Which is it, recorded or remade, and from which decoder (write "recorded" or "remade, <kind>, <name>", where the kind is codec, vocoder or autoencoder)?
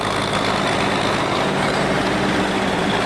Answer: recorded